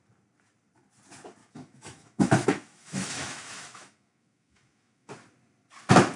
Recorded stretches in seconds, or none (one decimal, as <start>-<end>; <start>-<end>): 0.0-1.4; 5.1-6.2